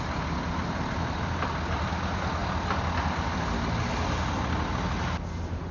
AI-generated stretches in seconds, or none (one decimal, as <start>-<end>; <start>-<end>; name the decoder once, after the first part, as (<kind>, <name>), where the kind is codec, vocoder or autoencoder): none